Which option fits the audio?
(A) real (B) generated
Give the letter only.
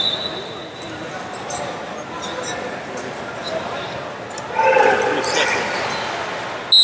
A